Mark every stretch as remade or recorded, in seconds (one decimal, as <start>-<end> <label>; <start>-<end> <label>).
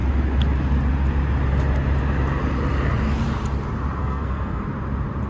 0.0-4.0 recorded; 4.0-4.6 remade; 4.6-5.3 recorded